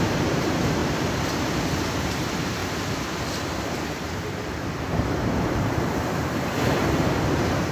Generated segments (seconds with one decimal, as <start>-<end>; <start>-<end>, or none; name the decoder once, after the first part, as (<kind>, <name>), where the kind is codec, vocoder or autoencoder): 0.0-0.8 (vocoder, BigVGAN v2); 1.6-2.6; 5.0-7.7